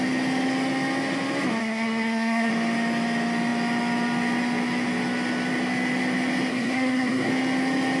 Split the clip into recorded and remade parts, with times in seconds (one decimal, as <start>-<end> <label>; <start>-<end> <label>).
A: 0.0-1.6 recorded; 1.6-2.5 remade; 2.5-6.5 recorded; 6.5-7.3 remade; 7.3-8.0 recorded